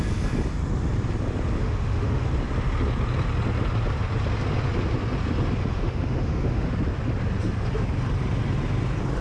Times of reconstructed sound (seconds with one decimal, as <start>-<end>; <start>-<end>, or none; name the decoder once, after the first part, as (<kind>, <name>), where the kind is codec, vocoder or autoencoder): 1.6-2.2 (autoencoder, DAC-VAE); 5.6-6.7